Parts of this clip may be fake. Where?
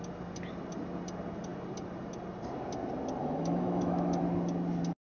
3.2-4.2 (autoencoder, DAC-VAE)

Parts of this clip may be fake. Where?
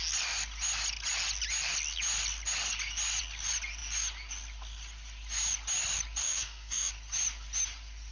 6.2-6.9 (autoencoder, DAC-VAE)